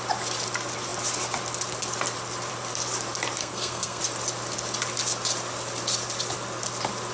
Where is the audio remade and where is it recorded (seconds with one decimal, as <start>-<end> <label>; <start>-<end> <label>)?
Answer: 0.0-3.4 recorded; 3.4-4.0 remade; 4.0-7.1 recorded